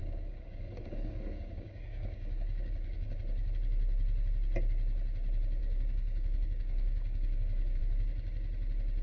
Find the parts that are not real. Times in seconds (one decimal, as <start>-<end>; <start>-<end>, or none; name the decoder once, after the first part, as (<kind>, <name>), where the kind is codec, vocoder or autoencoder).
0.0-3.2 (codec, DAC); 5.6-7.8